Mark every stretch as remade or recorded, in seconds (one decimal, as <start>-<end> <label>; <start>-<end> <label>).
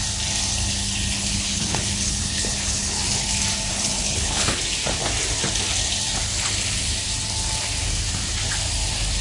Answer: 0.0-1.2 recorded; 1.2-3.3 remade; 3.3-3.7 recorded; 3.7-4.6 remade; 4.6-9.2 recorded